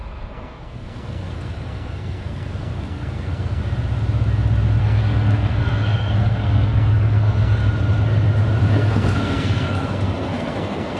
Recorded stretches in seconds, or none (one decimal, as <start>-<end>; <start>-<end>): 3.6-4.8; 7.6-8.7